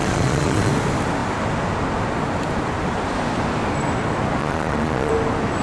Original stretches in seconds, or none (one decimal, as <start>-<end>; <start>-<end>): 0.7-4.4; 5.1-5.6